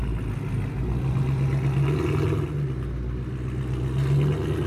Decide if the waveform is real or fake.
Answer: real